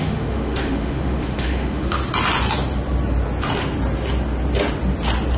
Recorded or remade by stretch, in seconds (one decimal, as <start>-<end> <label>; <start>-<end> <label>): 0.0-2.0 remade; 2.0-5.4 recorded